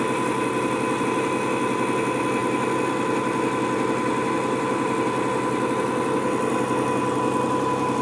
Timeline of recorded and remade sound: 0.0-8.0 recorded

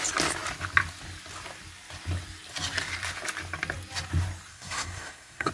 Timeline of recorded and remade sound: 0.0-4.5 recorded; 4.5-5.5 remade

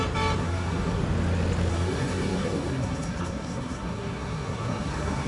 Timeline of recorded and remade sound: 0.0-0.4 recorded; 0.4-1.0 remade; 1.0-1.7 recorded; 1.7-5.3 remade

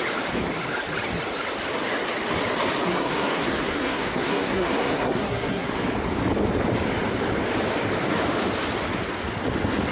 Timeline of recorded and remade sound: 0.0-2.9 recorded; 2.9-5.7 remade; 5.7-9.9 recorded

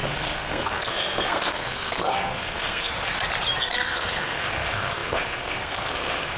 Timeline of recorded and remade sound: 0.0-2.9 remade; 2.9-3.6 recorded; 3.6-6.4 remade

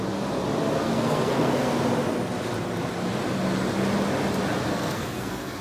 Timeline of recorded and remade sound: 0.0-0.8 recorded; 0.8-1.7 remade; 1.7-4.7 recorded; 4.7-5.6 remade

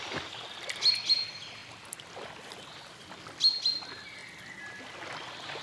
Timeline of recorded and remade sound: 0.0-5.6 recorded

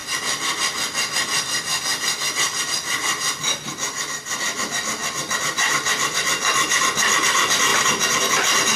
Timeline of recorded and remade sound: 0.0-8.8 recorded